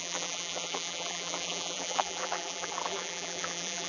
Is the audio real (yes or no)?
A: no